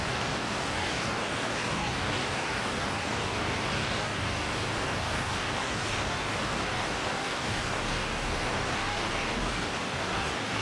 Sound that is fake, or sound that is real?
fake